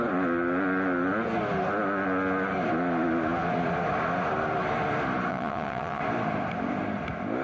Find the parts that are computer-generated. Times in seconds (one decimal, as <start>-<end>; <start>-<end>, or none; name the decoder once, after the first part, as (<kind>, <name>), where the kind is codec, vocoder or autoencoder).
5.3-6.0 (vocoder, Vocos)